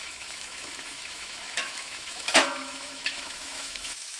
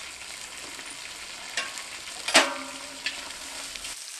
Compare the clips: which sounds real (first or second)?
second